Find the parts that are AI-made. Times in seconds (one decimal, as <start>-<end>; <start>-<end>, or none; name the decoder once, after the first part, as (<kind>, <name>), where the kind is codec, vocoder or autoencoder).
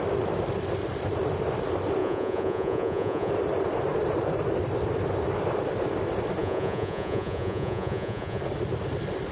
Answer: 2.0-3.3 (vocoder, Vocos); 6.4-8.4